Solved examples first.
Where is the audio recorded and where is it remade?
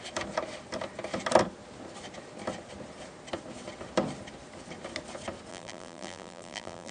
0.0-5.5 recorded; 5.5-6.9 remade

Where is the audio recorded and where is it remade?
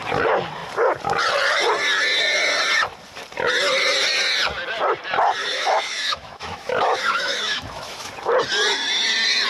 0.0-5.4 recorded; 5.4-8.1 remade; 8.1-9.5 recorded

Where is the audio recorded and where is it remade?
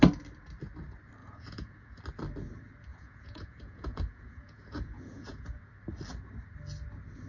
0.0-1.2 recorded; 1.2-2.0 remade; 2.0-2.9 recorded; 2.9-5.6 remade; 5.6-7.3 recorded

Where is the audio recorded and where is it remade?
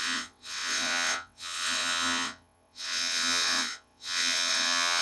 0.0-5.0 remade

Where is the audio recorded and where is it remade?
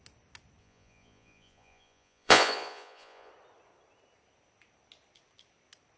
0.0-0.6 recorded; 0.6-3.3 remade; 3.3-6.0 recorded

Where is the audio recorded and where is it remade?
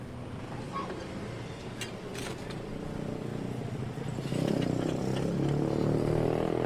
0.0-6.7 recorded